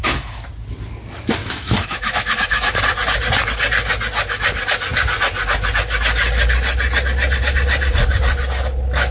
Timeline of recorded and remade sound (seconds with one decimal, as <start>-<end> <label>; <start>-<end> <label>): 0.0-0.5 remade; 0.5-1.4 recorded; 1.4-2.8 remade; 2.8-9.1 recorded